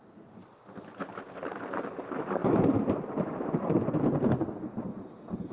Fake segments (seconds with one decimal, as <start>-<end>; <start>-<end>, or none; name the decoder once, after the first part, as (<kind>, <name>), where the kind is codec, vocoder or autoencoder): none